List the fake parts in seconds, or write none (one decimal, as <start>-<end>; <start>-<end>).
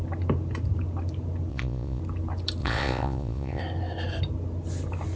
1.5-2.0; 2.6-3.6